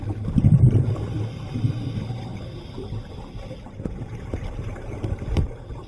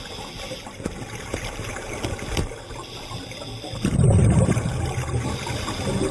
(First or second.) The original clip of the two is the second